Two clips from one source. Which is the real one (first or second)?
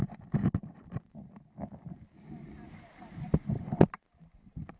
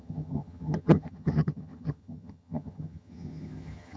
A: first